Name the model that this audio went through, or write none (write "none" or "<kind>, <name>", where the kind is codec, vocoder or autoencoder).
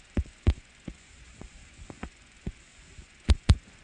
vocoder, Vocos